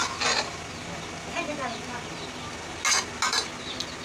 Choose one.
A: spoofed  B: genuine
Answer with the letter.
B